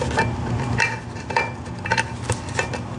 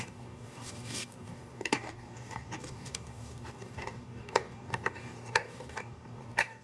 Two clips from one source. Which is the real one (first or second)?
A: first